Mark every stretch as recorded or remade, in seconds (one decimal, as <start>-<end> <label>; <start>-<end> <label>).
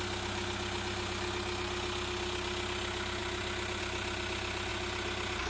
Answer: 0.0-5.5 recorded